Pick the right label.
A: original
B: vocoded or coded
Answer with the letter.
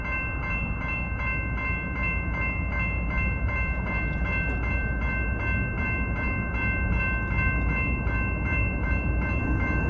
A